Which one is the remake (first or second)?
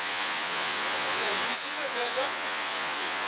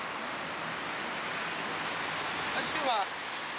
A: first